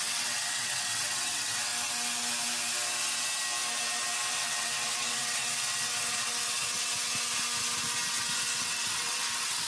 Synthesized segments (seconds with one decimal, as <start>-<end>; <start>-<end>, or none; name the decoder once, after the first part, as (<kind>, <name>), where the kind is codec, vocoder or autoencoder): 0.0-1.7 (vocoder, WaveNeXt); 4.3-6.9; 8.1-9.7